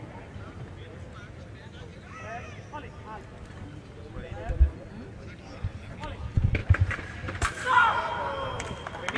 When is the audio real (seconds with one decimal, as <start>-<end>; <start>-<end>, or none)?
0.0-1.9; 2.5-6.6; 8.7-9.2